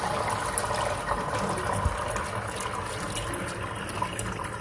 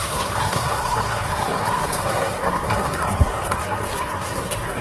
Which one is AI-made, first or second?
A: second